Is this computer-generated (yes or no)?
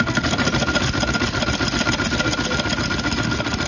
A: no